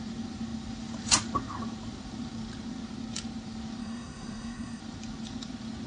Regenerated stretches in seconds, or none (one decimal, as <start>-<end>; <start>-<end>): 3.8-4.8